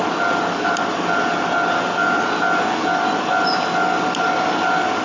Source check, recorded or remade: recorded